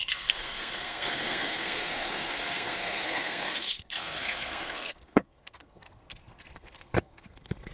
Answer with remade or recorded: remade